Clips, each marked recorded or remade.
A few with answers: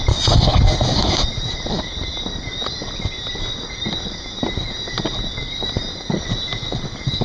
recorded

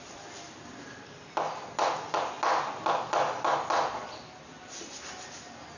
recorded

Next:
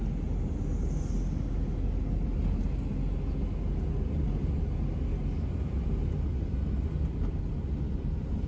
recorded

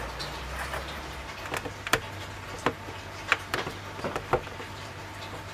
remade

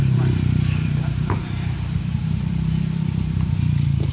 remade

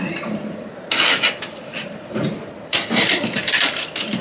remade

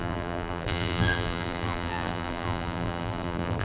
remade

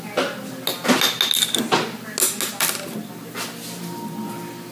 recorded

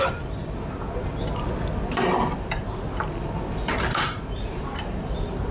remade